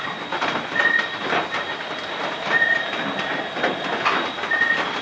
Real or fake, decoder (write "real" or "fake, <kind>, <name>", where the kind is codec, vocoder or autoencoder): real